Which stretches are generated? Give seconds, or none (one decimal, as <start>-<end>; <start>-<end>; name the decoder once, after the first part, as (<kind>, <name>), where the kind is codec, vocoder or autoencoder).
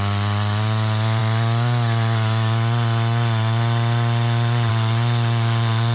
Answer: none